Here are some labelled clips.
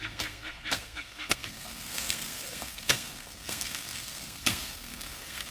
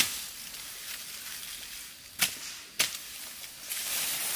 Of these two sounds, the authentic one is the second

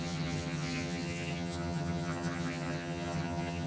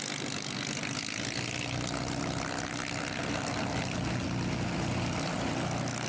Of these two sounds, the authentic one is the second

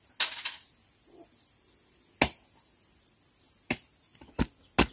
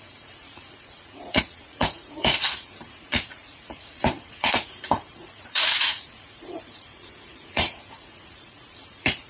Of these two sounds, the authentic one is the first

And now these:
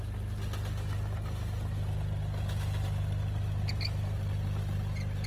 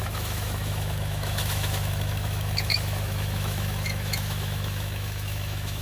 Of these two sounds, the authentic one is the first